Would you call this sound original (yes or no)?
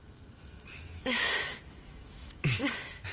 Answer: no